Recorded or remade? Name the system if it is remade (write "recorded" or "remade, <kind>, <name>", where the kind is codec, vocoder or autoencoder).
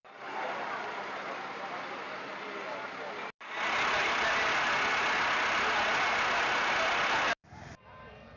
recorded